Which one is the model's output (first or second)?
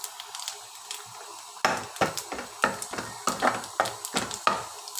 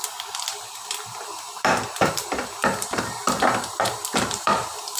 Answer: second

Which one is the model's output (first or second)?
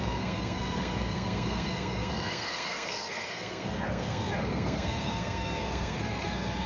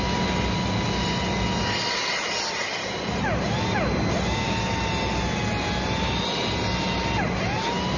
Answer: first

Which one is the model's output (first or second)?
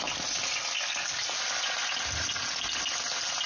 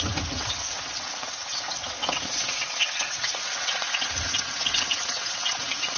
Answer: second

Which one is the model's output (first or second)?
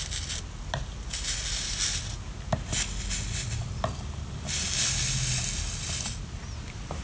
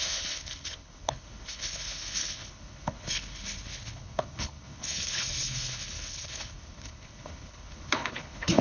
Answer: second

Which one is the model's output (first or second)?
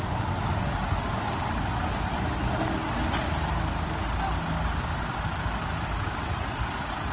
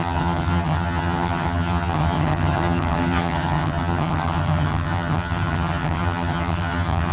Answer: second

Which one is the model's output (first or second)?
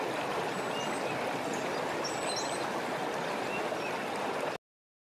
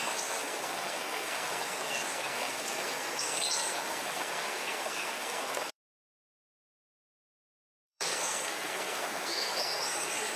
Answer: second